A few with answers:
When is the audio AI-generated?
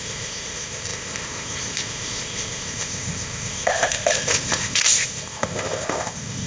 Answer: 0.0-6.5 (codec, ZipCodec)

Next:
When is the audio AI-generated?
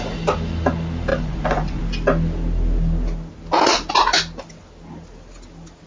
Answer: 1.1-1.8 (vocoder, Vocos)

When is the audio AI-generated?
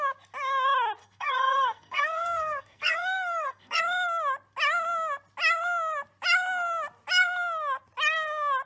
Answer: 1.0-3.8 (codec, SNAC)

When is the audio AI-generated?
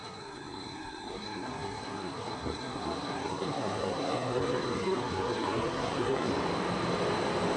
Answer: 0.0-6.3 (codec, SNAC)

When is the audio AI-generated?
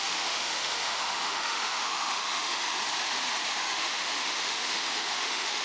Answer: 0.0-2.8 (autoencoder, DAC-VAE); 3.5-5.6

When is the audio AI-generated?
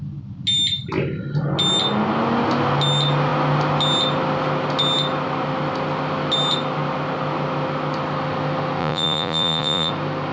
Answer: 8.8-9.9 (vocoder, Vocos)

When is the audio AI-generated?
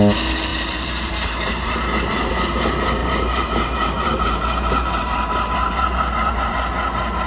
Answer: 0.5-2.3 (vocoder, BigVGAN v2); 3.0-6.5